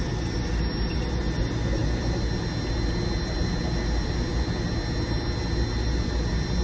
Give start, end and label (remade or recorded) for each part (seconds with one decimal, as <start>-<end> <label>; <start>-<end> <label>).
0.0-6.6 recorded